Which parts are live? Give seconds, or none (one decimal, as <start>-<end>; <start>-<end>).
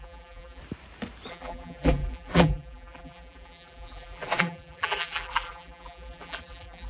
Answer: 0.6-1.3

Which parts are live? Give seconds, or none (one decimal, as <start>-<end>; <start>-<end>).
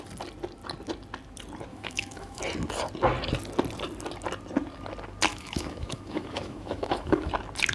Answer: 0.0-1.7; 2.4-5.3; 7.3-7.7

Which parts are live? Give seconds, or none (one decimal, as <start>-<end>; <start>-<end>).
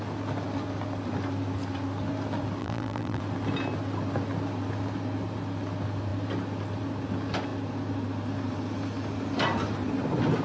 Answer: 0.0-2.6; 3.2-10.4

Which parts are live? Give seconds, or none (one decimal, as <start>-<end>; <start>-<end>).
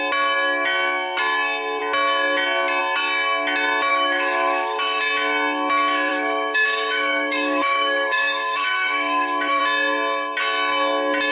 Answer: 0.0-3.9; 5.0-6.1; 9.6-11.3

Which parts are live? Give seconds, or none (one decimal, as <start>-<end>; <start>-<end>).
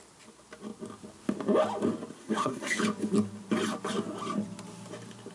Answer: 0.0-2.2; 2.8-5.3